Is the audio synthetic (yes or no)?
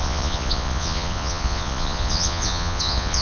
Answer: yes